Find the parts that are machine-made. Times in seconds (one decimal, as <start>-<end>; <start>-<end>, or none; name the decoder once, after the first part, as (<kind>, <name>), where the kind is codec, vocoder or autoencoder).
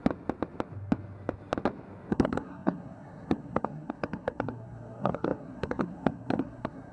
2.1-6.9 (codec, SNAC)